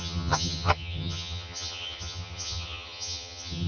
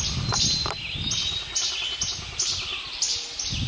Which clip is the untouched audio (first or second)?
second